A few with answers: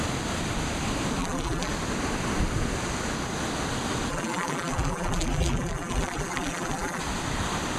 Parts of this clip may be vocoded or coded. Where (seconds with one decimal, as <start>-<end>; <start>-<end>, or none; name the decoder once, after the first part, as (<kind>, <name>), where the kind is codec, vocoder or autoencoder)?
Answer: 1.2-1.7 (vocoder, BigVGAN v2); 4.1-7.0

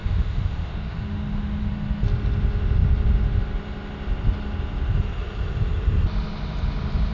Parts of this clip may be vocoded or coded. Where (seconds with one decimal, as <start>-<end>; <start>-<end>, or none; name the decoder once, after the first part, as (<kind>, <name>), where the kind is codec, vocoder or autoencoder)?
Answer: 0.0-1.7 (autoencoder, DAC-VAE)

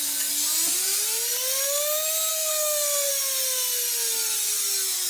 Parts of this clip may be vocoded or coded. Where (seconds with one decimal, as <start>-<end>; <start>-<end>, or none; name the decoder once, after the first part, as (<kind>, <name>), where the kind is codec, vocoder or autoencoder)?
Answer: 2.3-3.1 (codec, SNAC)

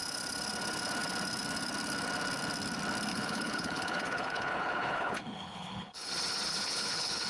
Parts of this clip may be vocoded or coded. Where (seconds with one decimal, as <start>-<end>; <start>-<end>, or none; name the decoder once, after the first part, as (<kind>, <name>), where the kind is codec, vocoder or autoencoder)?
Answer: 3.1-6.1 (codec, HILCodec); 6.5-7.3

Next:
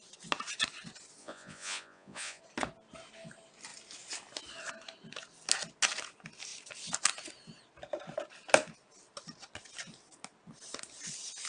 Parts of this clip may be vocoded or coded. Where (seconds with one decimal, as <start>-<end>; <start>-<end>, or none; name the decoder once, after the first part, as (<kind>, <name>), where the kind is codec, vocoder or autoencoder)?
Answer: 1.2-2.4 (vocoder, Vocos)

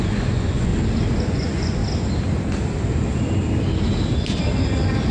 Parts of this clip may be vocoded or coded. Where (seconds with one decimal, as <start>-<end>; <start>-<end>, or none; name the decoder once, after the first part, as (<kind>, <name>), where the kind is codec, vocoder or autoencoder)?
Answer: 0.0-0.7 (vocoder, Vocos); 1.2-1.8